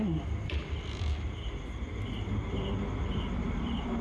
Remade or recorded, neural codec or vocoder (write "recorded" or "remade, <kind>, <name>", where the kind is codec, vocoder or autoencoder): recorded